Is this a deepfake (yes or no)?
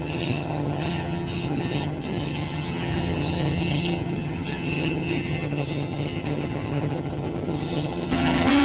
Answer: yes